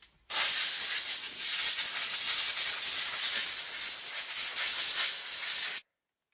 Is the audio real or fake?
real